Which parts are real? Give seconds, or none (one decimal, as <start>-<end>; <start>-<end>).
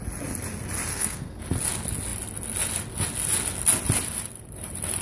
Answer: 0.0-0.9; 1.4-5.0